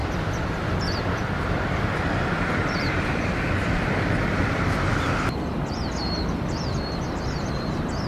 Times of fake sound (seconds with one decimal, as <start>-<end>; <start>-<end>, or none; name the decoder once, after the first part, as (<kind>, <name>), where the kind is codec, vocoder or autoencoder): 0.0-4.9 (vocoder, BigVGAN v2); 6.0-6.7